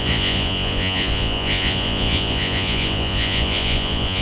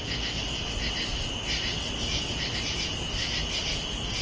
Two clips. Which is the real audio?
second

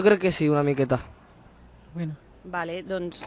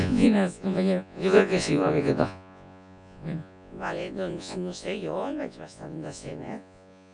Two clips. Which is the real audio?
first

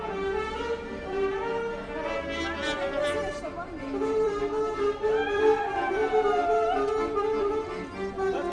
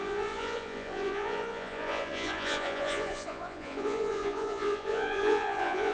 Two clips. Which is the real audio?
first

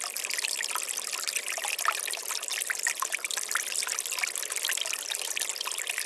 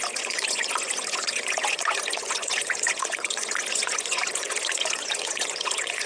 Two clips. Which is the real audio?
first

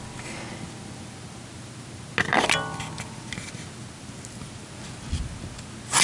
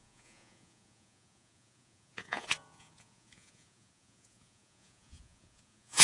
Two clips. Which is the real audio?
first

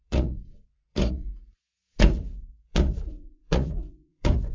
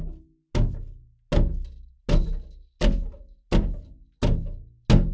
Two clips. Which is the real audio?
second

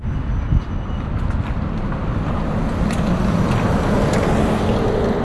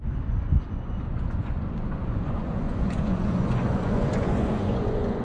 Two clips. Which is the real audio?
first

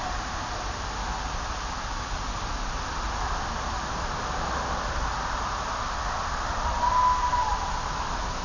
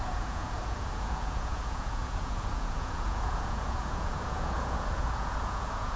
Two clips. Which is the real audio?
first